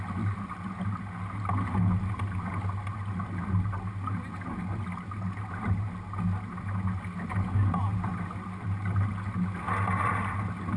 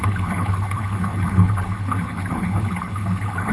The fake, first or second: second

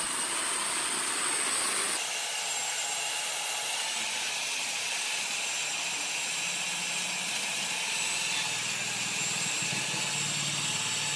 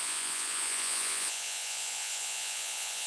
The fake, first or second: second